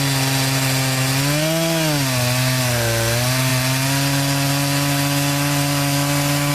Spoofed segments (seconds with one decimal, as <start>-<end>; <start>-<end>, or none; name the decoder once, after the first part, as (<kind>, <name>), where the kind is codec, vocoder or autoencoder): none